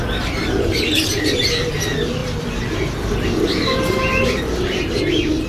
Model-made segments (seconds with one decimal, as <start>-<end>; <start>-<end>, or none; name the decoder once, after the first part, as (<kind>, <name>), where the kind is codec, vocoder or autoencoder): 0.4-1.6 (vocoder, BigVGAN v2)